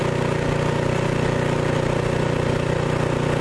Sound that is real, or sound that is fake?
real